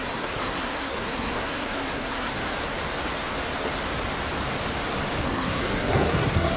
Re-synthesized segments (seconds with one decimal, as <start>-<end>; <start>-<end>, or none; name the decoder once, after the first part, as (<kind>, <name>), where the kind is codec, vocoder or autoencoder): 0.0-2.5 (codec, SNAC); 5.2-6.6